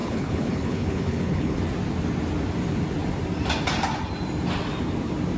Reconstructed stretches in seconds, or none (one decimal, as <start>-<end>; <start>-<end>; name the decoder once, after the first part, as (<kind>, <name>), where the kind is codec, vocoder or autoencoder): 0.0-1.6 (codec, HILCodec)